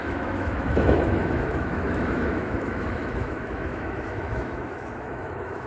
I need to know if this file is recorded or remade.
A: remade